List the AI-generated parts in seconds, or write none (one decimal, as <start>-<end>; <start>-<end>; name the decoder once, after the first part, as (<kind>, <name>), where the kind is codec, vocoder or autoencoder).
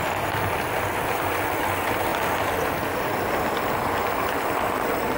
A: none